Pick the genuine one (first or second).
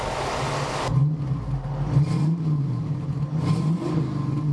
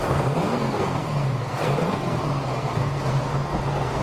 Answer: first